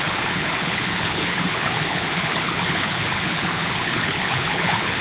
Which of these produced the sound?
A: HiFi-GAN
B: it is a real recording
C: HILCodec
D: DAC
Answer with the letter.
C